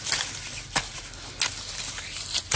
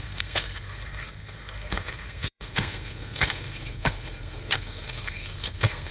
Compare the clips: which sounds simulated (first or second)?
second